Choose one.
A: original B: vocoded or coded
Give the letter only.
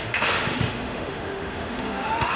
B